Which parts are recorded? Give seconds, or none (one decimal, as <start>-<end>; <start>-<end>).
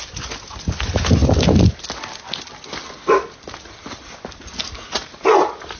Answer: 0.0-5.8